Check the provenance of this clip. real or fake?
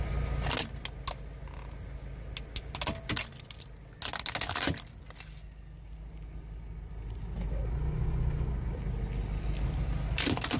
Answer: real